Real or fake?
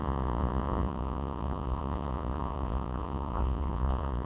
fake